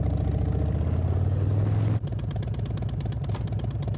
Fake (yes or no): no